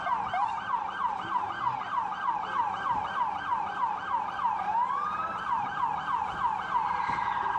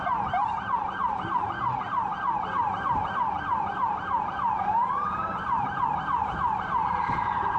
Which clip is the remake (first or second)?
second